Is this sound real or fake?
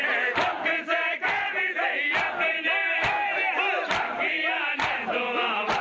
real